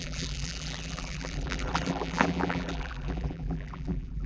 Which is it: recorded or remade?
remade